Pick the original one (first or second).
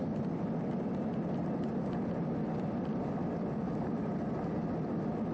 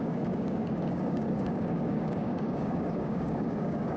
first